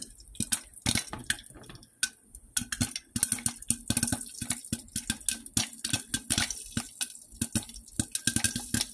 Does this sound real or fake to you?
real